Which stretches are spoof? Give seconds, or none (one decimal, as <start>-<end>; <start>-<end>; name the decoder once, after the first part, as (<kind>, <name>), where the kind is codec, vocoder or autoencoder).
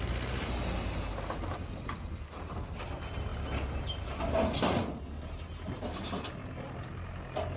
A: none